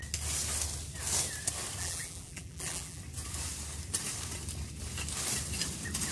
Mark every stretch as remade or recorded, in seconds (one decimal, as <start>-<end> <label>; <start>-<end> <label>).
0.0-1.8 recorded; 1.8-3.0 remade; 3.0-6.1 recorded